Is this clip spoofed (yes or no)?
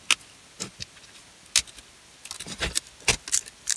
no